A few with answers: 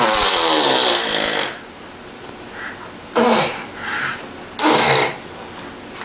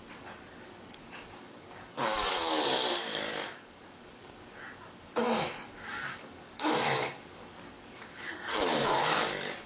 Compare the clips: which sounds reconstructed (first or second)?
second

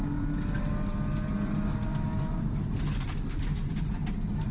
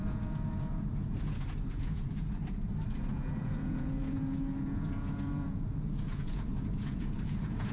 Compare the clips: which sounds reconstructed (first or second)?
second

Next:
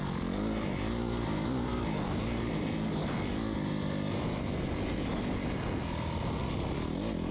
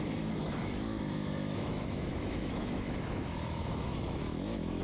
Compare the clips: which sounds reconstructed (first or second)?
second